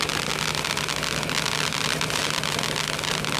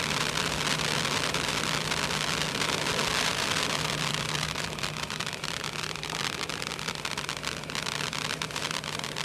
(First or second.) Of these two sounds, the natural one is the first